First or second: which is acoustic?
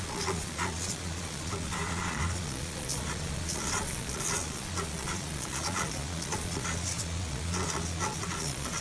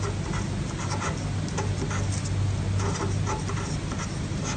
second